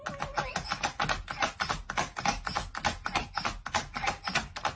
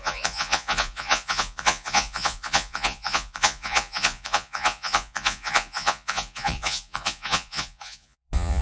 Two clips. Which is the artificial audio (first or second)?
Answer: second